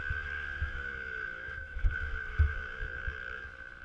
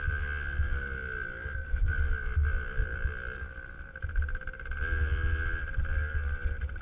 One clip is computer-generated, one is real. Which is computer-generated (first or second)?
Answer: first